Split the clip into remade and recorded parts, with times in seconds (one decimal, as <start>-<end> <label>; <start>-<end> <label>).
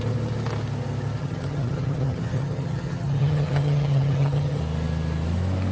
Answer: 0.0-1.2 recorded; 1.2-4.6 remade; 4.6-5.7 recorded